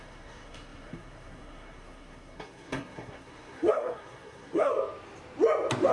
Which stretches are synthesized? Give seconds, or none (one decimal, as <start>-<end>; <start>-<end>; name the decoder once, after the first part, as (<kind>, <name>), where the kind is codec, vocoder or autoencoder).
0.0-4.7 (codec, SNAC)